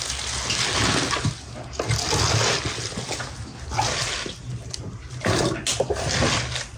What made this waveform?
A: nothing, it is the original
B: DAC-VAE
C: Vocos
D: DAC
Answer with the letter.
A